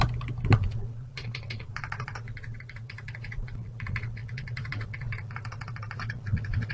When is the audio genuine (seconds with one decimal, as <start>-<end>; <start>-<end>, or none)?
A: 0.0-0.5